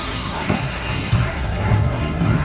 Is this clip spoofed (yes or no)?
yes